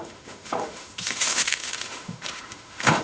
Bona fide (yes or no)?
no